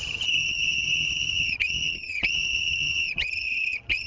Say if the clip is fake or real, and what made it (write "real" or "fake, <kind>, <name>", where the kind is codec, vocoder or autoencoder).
fake, vocoder, HiFi-GAN